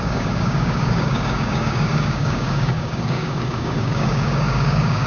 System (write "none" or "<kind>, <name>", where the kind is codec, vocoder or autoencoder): codec, DAC